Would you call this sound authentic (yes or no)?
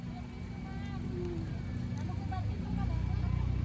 yes